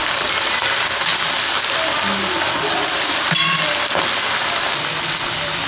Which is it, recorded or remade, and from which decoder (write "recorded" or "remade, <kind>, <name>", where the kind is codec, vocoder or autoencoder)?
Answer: recorded